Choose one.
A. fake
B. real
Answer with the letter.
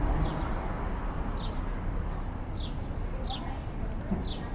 B